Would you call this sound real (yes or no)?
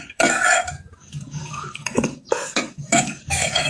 no